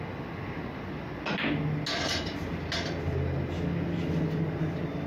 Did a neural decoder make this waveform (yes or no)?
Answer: no